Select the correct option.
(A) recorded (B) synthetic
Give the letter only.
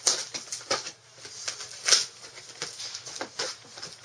A